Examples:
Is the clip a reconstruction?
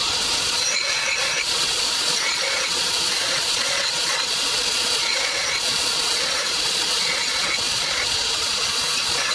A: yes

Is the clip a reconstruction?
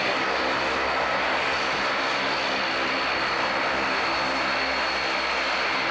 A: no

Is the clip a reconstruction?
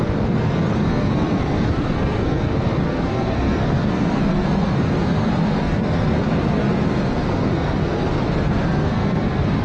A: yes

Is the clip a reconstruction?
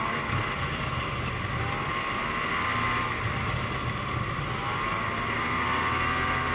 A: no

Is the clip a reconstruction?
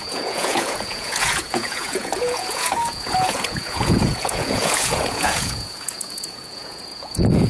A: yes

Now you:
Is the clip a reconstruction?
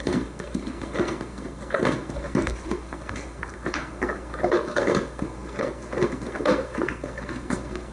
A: yes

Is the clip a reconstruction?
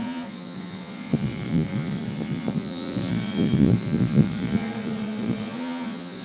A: yes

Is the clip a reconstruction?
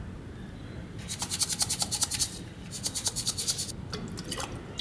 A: no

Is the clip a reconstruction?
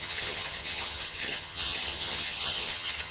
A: yes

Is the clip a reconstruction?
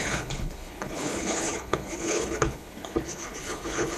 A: yes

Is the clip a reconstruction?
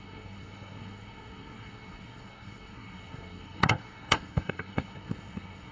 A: yes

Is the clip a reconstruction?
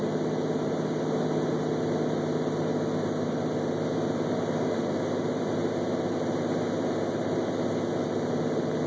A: no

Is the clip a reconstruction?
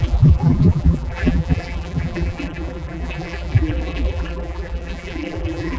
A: yes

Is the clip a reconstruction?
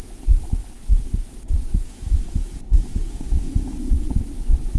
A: yes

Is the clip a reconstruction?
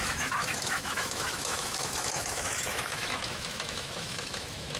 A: yes